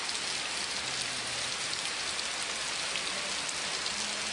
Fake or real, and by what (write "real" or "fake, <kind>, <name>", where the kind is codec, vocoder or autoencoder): real